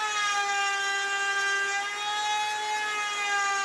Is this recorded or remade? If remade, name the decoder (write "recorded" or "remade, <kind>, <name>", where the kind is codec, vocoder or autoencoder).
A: recorded